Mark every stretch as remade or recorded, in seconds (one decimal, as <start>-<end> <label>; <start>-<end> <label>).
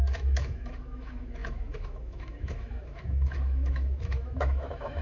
0.0-5.0 remade